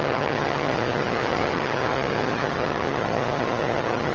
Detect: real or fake fake